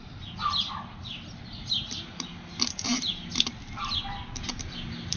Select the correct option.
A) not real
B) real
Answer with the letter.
B